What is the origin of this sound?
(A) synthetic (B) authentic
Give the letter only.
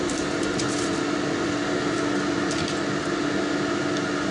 B